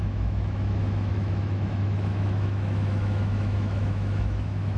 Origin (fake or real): fake